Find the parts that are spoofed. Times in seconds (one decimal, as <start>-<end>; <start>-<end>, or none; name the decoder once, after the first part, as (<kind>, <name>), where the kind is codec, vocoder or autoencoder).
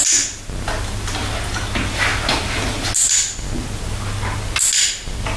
none